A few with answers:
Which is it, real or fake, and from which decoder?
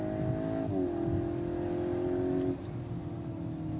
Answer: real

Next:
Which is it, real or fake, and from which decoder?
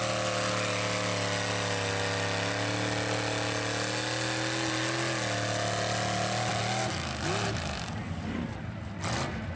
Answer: real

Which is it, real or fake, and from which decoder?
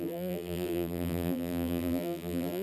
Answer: fake, vocoder, BigVGAN v2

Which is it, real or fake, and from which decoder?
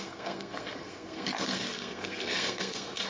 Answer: fake, codec, SNAC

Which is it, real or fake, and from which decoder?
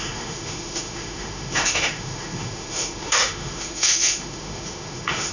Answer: fake, autoencoder, DAC-VAE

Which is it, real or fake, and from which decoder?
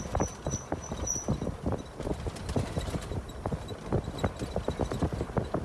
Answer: real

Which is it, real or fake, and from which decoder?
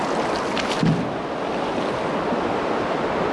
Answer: real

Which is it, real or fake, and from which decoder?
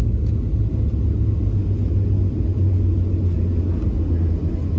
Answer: real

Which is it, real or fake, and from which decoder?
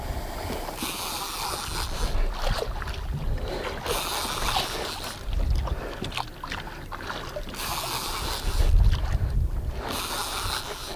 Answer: real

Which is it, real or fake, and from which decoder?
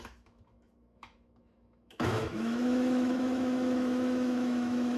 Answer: fake, autoencoder, DAC-VAE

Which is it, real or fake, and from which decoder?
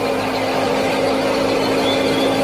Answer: real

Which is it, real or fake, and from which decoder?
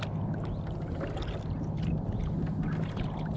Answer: real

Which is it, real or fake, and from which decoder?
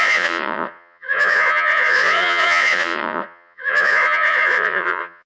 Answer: fake, vocoder, Vocos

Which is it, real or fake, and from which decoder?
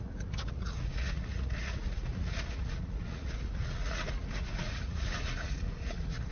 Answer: fake, vocoder, Vocos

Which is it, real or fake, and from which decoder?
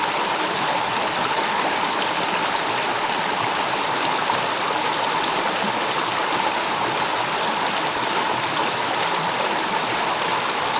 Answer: real